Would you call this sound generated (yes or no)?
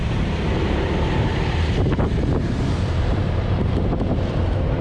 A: yes